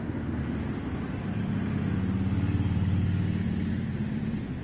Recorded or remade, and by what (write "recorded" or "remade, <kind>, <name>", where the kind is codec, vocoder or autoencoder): recorded